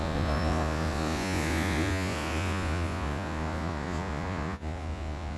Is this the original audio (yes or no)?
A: no